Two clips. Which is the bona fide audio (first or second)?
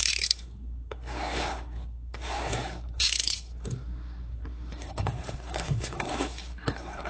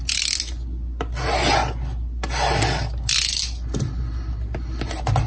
second